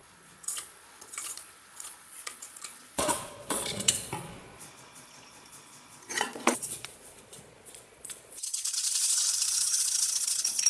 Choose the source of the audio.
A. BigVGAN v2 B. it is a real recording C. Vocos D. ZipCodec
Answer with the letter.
C